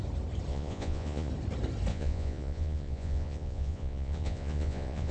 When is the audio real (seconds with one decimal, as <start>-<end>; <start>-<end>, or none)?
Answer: 0.0-0.5; 1.3-1.9